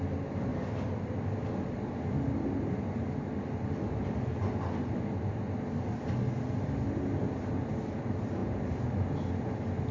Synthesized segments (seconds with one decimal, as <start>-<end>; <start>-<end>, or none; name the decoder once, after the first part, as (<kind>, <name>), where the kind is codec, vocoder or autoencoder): 0.5-1.5 (vocoder, BigVGAN v2)